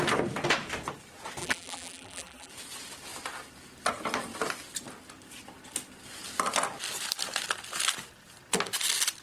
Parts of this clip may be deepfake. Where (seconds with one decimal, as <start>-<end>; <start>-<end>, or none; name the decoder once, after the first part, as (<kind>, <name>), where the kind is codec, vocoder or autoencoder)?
1.4-2.5 (vocoder, BigVGAN v2)